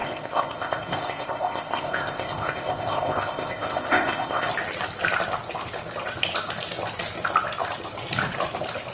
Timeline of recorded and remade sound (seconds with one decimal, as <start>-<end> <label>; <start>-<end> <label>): 0.0-4.5 remade; 4.5-8.9 recorded

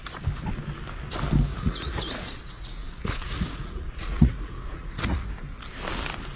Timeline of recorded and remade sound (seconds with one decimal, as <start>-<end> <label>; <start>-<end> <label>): 0.0-1.5 recorded; 1.5-5.3 remade; 5.3-6.3 recorded

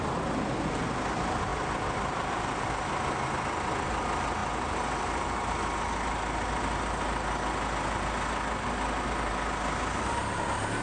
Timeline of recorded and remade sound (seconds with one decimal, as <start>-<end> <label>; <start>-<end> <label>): 0.0-10.8 recorded

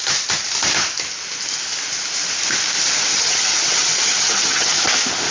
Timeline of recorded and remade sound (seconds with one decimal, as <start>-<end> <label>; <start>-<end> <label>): 0.0-3.1 recorded; 3.1-4.8 remade; 4.8-5.3 recorded

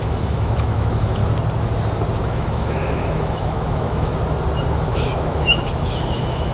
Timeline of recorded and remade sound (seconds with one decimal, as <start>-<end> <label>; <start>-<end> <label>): 0.0-1.2 remade; 1.2-2.2 recorded; 2.2-4.1 remade; 4.1-4.9 recorded; 4.9-6.5 remade

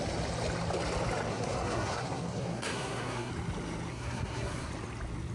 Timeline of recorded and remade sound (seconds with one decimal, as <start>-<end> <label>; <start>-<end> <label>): 0.0-1.3 recorded; 1.3-3.3 remade; 3.3-3.9 recorded; 3.9-4.7 remade; 4.7-5.3 recorded

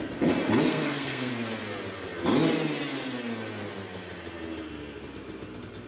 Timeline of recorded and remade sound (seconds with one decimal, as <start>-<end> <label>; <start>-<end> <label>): 0.0-0.7 recorded; 0.7-1.3 remade; 1.3-5.9 recorded